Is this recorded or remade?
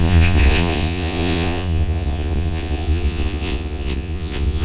remade